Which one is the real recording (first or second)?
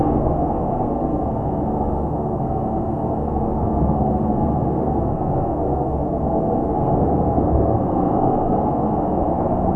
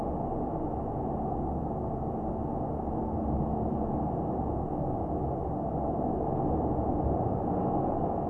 second